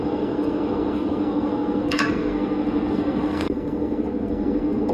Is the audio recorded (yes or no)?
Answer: no